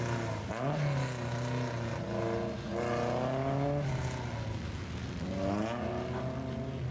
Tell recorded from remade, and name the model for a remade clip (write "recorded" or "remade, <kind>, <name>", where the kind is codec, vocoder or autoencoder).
recorded